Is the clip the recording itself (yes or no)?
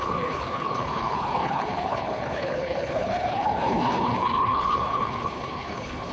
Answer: no